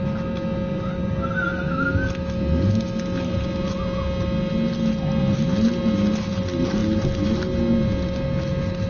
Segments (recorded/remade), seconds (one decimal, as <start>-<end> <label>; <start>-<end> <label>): 0.0-8.9 recorded